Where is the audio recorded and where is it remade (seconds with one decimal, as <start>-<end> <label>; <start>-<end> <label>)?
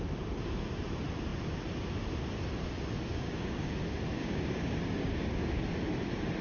0.0-3.1 recorded; 3.1-3.7 remade; 3.7-4.2 recorded; 4.2-5.6 remade; 5.6-6.4 recorded